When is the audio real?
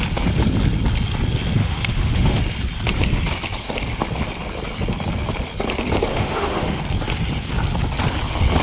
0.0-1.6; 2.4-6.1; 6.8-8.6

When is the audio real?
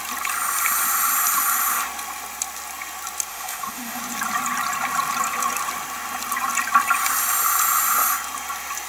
0.0-3.3; 4.0-8.9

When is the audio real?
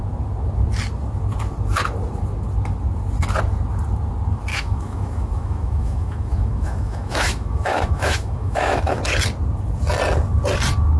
0.0-4.5; 9.0-11.0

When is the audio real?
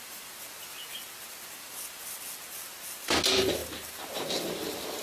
0.0-5.0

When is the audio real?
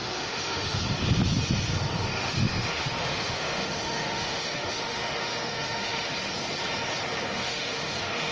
0.8-2.1; 6.1-7.4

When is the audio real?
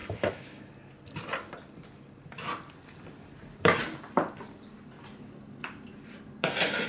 0.7-6.9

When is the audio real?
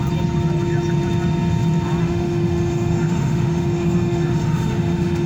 0.0-2.0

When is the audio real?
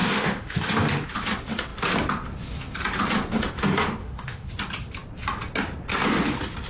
0.6-4.0; 4.5-6.7